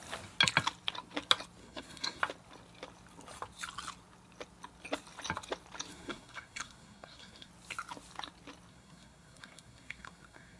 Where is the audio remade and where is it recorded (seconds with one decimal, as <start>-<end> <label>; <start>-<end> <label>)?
0.0-1.6 recorded; 1.6-2.2 remade; 2.2-5.9 recorded; 5.9-7.5 remade; 7.5-8.7 recorded; 8.7-10.6 remade